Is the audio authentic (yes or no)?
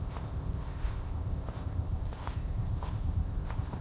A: no